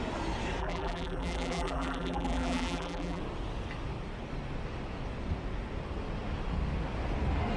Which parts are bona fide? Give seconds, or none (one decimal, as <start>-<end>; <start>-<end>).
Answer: 0.0-0.6; 3.2-7.6